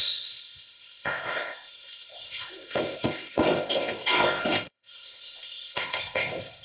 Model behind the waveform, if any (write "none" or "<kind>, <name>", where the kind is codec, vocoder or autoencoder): codec, ZipCodec